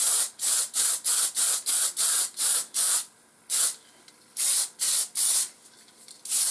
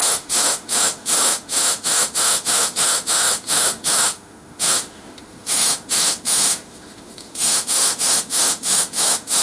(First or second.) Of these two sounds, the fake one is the second